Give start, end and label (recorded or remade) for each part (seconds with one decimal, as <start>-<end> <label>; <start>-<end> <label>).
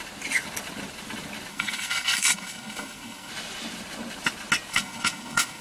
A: 0.0-1.5 recorded; 1.5-3.3 remade; 3.3-4.7 recorded; 4.7-5.6 remade